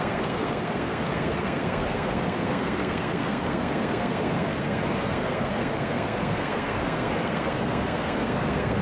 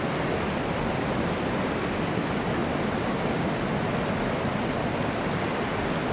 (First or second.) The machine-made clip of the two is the first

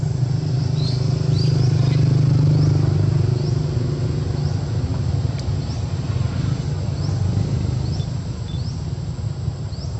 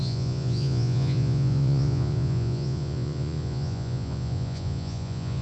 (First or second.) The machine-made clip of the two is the second